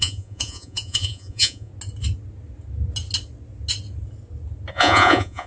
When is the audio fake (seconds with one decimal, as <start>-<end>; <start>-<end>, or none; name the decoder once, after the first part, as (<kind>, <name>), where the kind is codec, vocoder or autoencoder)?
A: 0.0-1.7 (vocoder, Vocos); 4.7-5.5